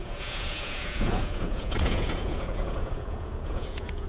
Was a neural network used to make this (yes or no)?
yes